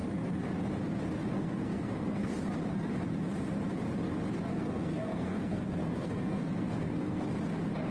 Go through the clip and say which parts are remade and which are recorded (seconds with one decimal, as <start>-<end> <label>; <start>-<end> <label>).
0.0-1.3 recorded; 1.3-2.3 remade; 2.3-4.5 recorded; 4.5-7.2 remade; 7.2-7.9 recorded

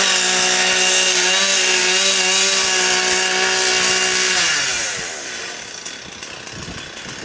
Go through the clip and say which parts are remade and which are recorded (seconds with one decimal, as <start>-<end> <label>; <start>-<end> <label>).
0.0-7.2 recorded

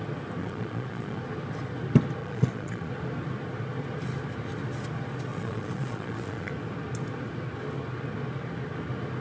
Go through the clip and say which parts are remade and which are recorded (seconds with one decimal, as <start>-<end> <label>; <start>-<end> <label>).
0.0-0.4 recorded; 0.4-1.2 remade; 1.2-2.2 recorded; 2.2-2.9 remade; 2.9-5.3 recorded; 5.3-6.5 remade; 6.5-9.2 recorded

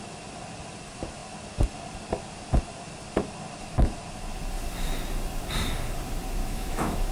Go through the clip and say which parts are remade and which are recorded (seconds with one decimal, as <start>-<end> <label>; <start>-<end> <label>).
0.0-6.4 recorded; 6.4-7.1 remade